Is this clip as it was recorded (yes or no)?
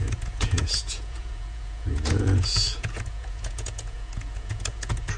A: no